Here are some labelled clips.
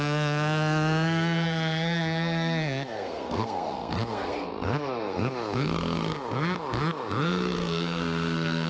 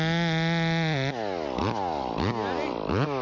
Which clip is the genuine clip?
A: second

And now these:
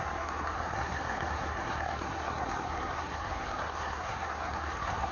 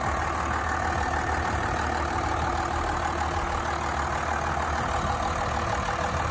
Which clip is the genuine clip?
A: second